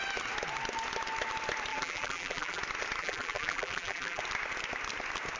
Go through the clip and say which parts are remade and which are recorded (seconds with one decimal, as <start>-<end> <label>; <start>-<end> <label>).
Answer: 0.0-1.7 recorded; 1.7-2.6 remade; 2.6-3.0 recorded; 3.0-4.2 remade; 4.2-5.4 recorded